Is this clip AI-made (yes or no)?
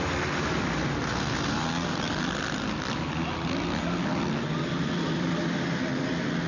no